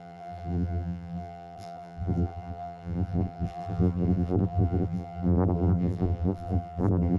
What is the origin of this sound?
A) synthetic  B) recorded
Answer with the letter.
A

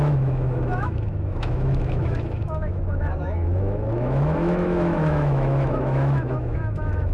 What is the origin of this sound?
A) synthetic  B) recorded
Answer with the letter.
A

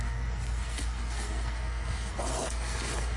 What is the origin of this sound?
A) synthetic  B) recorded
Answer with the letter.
A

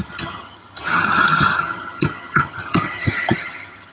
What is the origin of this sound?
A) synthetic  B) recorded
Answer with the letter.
A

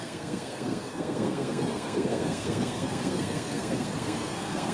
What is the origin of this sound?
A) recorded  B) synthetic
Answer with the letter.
B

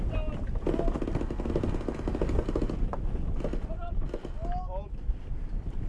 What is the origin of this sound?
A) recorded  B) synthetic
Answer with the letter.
A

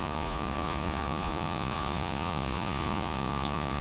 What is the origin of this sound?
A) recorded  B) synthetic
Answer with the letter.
B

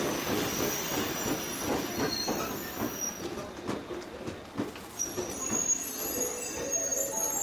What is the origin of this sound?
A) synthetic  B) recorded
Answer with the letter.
A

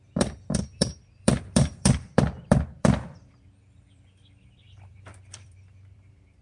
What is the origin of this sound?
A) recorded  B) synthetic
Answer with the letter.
B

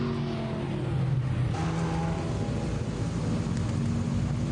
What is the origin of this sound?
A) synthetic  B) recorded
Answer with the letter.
B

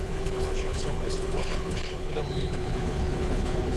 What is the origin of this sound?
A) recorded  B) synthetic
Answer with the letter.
B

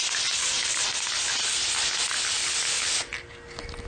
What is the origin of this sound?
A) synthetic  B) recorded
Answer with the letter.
B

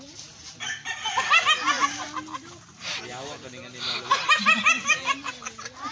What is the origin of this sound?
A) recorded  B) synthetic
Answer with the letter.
A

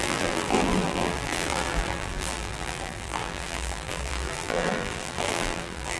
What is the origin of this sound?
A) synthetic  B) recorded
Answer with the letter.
A